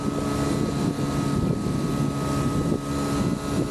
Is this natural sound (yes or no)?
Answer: yes